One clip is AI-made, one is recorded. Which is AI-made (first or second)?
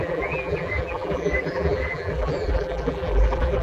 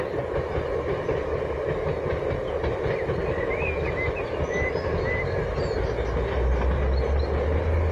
first